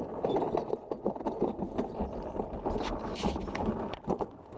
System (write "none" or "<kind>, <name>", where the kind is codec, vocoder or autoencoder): none